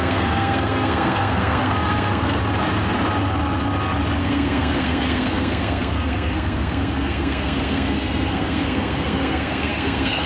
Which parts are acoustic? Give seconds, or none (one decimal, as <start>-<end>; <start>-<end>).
2.4-4.2